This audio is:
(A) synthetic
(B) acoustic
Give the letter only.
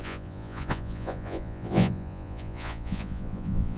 A